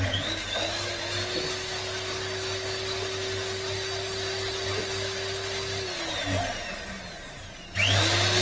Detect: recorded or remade recorded